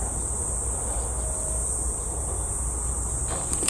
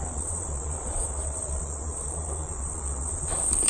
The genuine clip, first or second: first